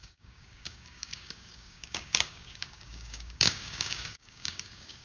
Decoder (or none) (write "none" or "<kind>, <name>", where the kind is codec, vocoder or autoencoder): codec, DAC